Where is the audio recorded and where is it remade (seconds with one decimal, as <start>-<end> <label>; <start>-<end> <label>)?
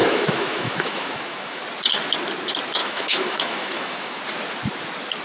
0.0-1.6 remade; 1.6-2.8 recorded; 2.8-4.2 remade; 4.2-5.2 recorded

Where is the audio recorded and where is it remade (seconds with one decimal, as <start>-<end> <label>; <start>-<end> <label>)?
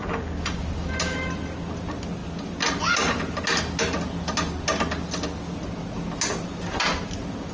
0.0-7.5 recorded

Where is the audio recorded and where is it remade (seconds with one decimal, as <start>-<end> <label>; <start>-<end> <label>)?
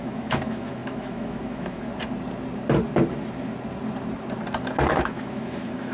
0.0-1.9 remade; 1.9-4.9 recorded; 4.9-5.9 remade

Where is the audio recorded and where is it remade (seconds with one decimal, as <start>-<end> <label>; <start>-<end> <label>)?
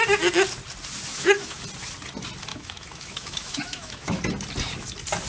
0.0-1.1 recorded; 1.1-1.6 remade; 1.6-2.5 recorded; 2.5-4.2 remade; 4.2-5.3 recorded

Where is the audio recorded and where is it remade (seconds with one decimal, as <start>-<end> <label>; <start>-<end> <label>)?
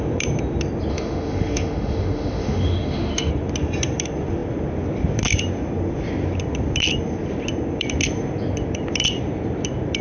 0.0-0.9 recorded; 0.9-3.3 remade; 3.3-10.0 recorded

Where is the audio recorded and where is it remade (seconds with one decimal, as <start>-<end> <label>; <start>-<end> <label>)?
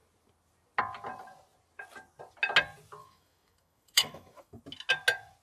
0.0-3.0 recorded; 3.0-4.6 remade; 4.6-5.4 recorded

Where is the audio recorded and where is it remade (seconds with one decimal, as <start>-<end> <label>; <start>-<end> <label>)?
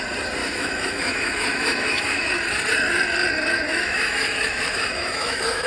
0.0-0.4 recorded; 0.4-2.3 remade; 2.3-3.7 recorded; 3.7-5.7 remade